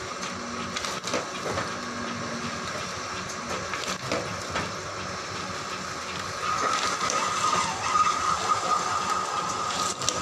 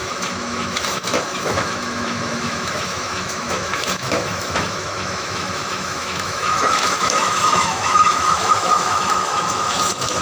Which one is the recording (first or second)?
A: first